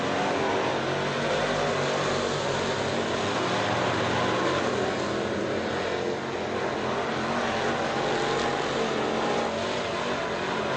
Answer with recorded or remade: recorded